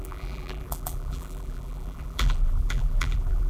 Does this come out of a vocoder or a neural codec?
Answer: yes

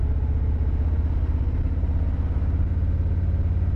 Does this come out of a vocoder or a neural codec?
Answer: no